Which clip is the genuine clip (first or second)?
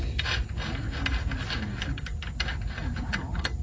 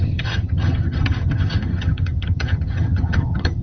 first